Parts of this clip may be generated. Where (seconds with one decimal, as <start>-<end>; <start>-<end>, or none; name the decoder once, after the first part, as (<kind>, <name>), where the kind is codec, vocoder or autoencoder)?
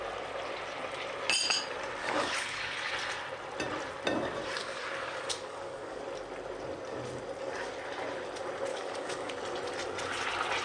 2.0-2.9 (codec, DAC); 4.6-6.0; 8.7-9.3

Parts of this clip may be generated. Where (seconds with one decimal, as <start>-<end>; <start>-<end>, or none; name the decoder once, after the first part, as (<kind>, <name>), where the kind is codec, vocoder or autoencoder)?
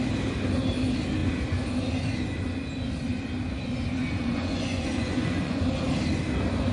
4.2-5.6 (vocoder, Vocos)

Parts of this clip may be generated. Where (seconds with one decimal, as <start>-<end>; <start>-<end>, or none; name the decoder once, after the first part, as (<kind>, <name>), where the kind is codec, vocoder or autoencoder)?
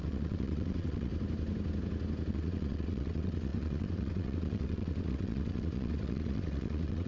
0.0-1.1 (vocoder, WaveNeXt); 2.3-7.1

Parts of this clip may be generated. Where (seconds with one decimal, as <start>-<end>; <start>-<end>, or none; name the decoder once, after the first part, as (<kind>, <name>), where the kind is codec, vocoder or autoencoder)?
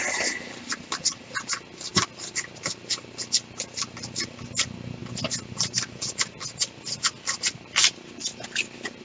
none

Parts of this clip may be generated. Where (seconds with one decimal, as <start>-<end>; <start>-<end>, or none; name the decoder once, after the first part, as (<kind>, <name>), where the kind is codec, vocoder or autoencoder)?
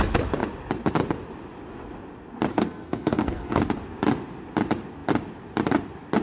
2.5-3.6 (codec, SNAC)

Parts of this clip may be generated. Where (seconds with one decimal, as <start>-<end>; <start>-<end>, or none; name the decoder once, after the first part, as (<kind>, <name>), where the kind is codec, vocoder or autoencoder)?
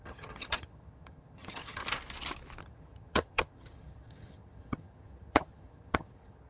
0.0-1.8 (vocoder, HiFi-GAN); 2.6-6.5